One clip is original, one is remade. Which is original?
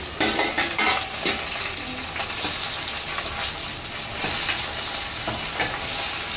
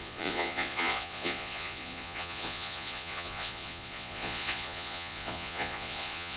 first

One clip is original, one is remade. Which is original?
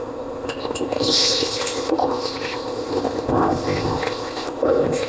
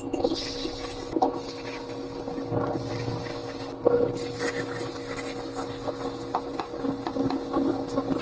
second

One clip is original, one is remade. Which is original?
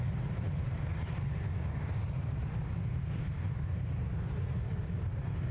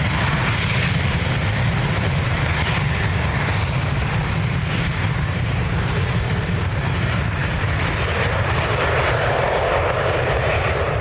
first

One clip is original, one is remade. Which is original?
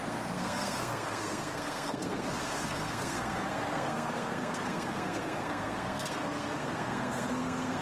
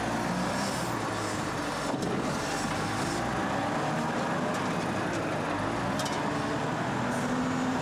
second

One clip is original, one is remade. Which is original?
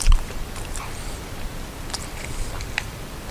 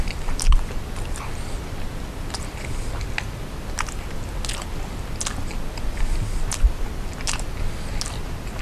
second